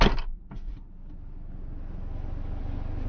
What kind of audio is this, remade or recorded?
recorded